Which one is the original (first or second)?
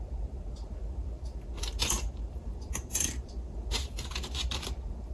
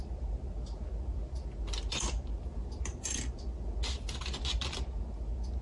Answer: second